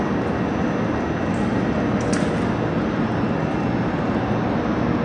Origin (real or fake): real